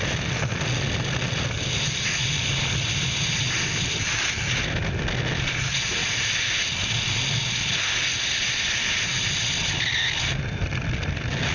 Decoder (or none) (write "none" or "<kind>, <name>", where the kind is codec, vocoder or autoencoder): none